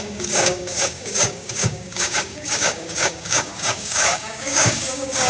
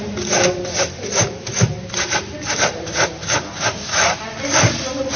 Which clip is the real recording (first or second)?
second